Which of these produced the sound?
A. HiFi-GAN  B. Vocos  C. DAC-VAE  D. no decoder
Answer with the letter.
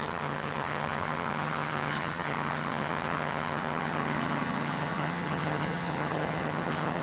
A